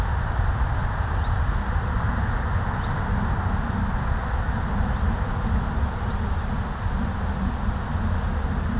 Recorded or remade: recorded